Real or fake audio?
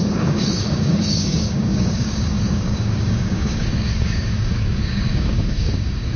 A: fake